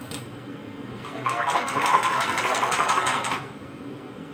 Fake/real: fake